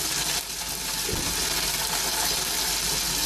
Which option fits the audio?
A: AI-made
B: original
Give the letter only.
B